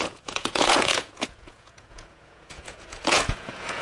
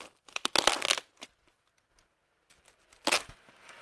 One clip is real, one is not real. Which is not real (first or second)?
first